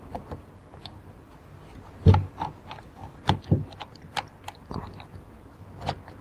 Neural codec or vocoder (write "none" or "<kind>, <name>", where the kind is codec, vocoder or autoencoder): none